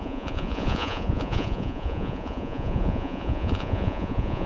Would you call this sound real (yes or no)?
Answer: no